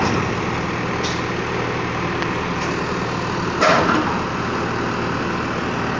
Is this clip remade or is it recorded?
recorded